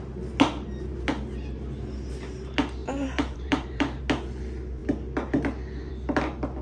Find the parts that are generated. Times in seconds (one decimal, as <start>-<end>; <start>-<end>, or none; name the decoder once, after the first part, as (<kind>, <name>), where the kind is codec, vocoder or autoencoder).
2.8-4.0 (vocoder, BigVGAN v2)